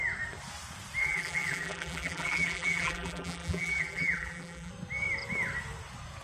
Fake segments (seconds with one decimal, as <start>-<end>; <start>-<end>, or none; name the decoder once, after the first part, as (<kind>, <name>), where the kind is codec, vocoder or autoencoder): 1.0-4.7 (vocoder, BigVGAN v2)